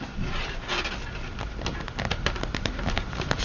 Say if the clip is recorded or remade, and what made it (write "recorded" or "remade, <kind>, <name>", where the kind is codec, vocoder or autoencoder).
recorded